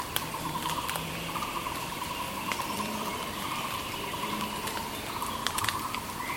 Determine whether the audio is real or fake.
fake